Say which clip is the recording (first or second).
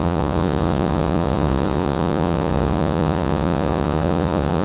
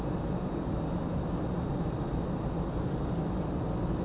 second